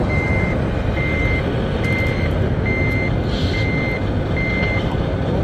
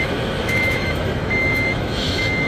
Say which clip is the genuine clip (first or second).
first